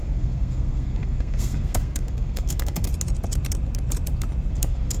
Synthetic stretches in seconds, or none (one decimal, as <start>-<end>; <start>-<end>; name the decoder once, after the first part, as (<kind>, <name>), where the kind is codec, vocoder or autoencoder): 0.0-2.9 (codec, SNAC); 4.5-5.0